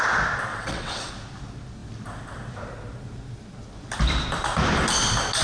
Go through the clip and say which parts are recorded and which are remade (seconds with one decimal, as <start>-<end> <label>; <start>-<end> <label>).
0.0-0.5 recorded; 0.5-1.1 remade; 1.1-5.4 recorded